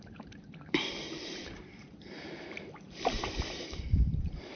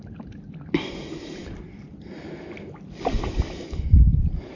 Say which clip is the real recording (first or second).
second